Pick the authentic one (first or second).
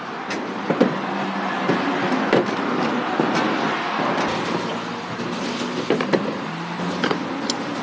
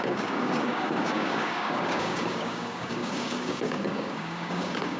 first